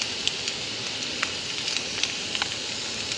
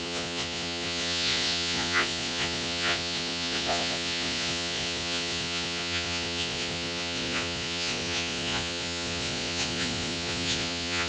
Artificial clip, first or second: second